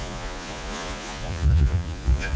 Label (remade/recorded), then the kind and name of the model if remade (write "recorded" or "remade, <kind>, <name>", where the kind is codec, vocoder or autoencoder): remade, vocoder, Vocos